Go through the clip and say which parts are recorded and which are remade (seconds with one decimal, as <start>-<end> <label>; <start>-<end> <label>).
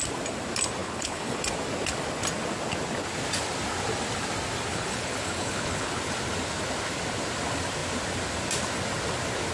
0.0-0.8 recorded; 0.8-1.4 remade; 1.4-4.7 recorded; 4.7-6.0 remade; 6.0-9.5 recorded